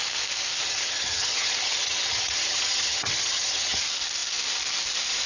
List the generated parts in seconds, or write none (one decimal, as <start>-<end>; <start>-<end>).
0.6-3.8